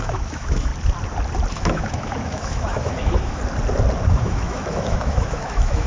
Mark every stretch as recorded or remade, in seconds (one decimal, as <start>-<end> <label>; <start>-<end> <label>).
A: 0.0-0.7 remade; 0.7-1.5 recorded; 1.5-3.4 remade; 3.4-4.1 recorded; 4.1-5.9 remade